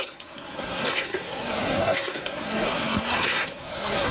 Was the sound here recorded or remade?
remade